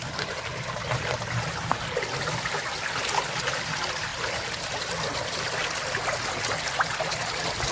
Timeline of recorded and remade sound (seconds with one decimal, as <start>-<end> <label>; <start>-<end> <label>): 0.0-7.7 recorded